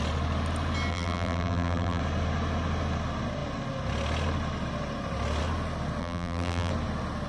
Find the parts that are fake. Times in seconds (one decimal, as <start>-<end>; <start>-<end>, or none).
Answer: 0.9-2.0; 6.0-6.7